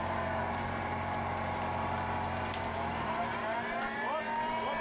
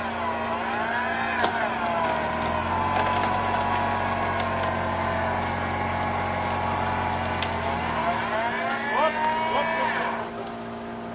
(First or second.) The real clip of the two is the second